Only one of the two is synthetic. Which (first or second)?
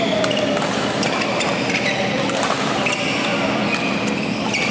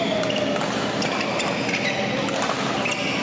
first